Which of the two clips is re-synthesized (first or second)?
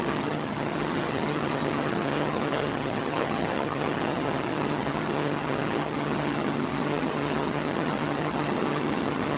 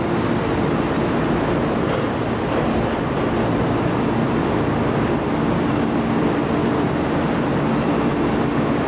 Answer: first